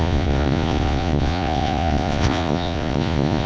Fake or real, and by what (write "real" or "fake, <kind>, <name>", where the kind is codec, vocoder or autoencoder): fake, vocoder, Vocos